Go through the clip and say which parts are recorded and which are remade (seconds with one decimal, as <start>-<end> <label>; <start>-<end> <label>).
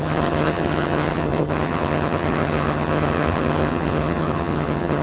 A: 0.0-5.0 remade